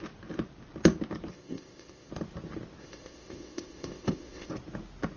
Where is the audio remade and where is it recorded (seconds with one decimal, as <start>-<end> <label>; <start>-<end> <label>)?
0.0-1.3 recorded; 1.3-2.1 remade; 2.1-2.8 recorded; 2.8-4.5 remade; 4.5-5.2 recorded